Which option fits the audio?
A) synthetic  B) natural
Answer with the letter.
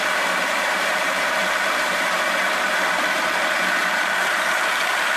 A